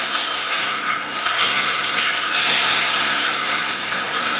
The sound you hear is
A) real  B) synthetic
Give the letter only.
B